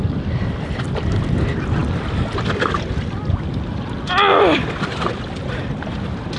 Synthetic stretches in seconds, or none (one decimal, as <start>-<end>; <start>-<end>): none